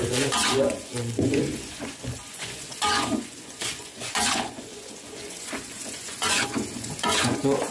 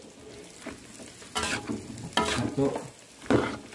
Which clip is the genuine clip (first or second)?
second